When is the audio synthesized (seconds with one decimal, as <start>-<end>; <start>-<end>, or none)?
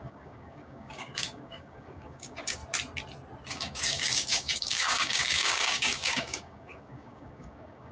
0.0-2.6; 3.5-7.9